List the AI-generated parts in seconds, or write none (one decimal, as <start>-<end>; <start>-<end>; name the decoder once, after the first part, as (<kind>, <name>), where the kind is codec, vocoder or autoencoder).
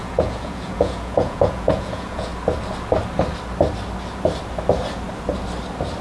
0.0-2.3 (vocoder, Vocos)